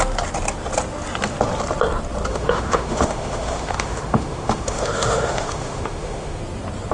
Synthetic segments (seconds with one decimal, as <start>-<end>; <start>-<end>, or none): 2.3-6.4